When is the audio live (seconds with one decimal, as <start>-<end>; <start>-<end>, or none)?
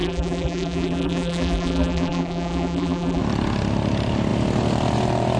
3.2-5.4